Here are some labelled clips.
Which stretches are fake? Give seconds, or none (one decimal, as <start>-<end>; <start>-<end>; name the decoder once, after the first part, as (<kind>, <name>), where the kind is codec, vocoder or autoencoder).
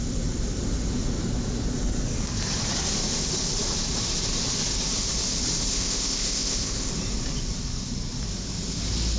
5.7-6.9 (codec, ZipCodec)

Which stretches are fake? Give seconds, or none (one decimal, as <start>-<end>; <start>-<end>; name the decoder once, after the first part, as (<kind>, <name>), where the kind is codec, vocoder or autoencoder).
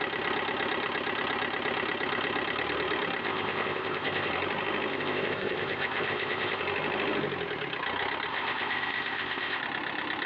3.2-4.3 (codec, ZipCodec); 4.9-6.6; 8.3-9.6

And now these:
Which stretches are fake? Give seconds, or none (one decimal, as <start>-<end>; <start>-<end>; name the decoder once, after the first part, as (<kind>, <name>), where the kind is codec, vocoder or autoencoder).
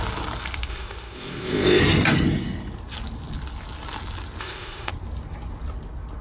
0.7-1.8 (codec, ZipCodec); 4.4-4.9